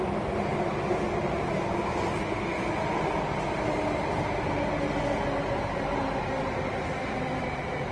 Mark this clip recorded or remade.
recorded